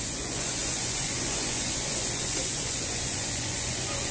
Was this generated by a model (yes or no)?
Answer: yes